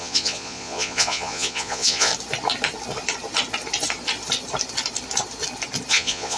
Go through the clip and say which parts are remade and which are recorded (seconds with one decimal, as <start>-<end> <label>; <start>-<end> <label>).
0.0-2.1 remade; 2.1-5.9 recorded; 5.9-6.4 remade

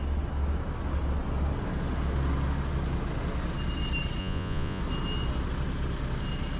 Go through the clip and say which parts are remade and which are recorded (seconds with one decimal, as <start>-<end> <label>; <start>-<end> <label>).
0.0-4.2 recorded; 4.2-4.8 remade; 4.8-6.6 recorded

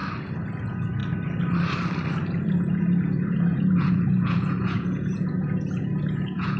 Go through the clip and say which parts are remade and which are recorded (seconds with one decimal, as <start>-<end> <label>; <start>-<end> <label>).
0.0-0.6 recorded; 0.6-1.0 remade; 1.0-2.5 recorded; 2.5-6.6 remade

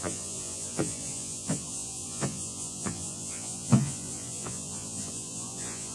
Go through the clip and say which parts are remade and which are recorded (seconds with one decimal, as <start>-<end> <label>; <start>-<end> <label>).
0.0-5.9 remade

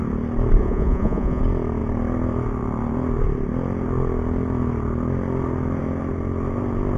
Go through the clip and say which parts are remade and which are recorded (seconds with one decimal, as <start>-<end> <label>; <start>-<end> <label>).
0.0-0.6 recorded; 0.6-1.4 remade; 1.4-7.0 recorded